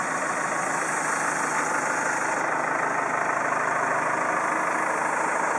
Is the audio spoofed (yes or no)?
no